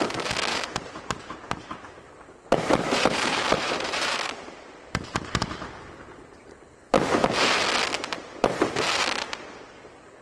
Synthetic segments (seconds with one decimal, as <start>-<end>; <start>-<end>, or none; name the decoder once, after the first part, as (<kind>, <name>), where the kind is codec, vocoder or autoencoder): 0.5-5.4 (vocoder, BigVGAN v2)